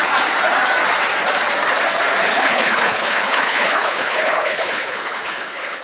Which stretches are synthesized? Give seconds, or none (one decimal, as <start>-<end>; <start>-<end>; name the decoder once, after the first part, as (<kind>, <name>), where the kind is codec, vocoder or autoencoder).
2.3-5.8 (codec, HILCodec)